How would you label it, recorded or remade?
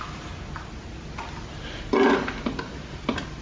recorded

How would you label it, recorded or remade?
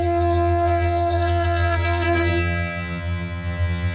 remade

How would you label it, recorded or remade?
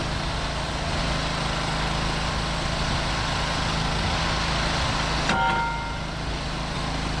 recorded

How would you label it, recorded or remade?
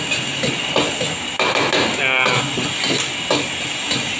recorded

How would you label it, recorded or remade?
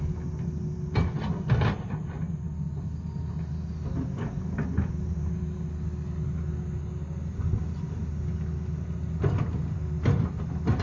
recorded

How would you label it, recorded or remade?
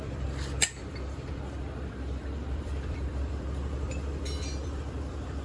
remade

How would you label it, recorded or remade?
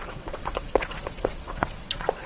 remade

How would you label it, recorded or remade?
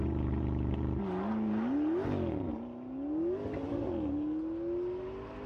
recorded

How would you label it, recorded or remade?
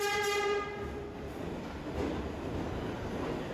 recorded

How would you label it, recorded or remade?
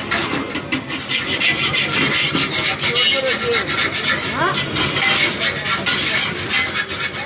recorded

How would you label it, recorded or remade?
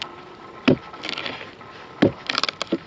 recorded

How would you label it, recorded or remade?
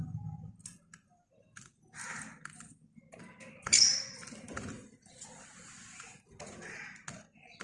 recorded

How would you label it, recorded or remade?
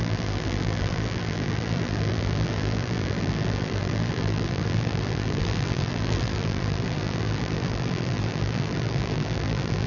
remade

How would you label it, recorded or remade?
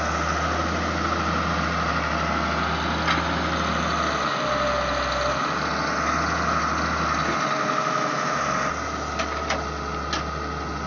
recorded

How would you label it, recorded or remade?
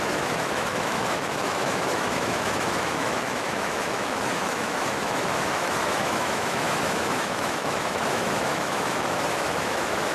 remade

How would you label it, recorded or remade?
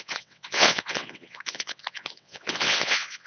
remade